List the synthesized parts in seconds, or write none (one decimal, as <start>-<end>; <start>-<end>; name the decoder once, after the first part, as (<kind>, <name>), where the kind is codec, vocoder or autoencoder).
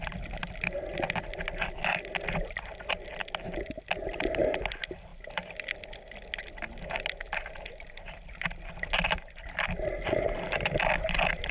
none